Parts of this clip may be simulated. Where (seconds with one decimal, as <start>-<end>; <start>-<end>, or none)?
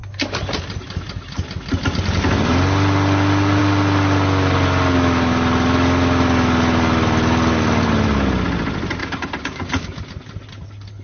9.0-10.0